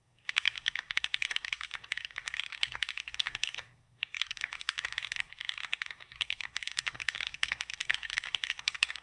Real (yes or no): no